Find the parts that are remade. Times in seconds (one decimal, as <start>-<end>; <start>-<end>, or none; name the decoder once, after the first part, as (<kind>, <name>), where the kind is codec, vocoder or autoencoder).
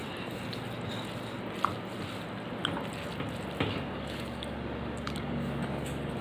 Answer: 3.7-6.2 (codec, DAC)